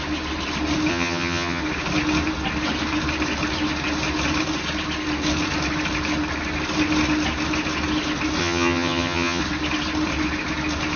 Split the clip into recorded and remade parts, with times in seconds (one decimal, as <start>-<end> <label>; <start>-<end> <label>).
0.0-0.9 recorded; 0.9-1.6 remade; 1.6-8.4 recorded; 8.4-9.4 remade; 9.4-11.0 recorded